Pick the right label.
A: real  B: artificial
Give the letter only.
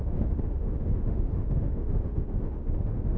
B